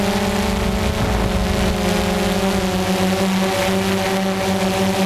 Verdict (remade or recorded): recorded